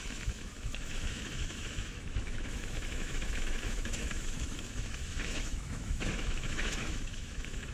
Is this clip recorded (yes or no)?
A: no